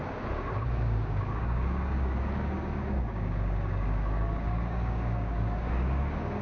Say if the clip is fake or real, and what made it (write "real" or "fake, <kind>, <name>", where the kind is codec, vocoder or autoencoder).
fake, codec, DAC